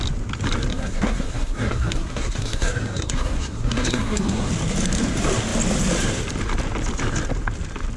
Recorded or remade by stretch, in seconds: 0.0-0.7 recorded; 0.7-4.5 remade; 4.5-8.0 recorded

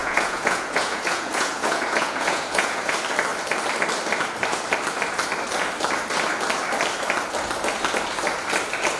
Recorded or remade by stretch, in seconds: 0.0-2.9 remade; 2.9-9.0 recorded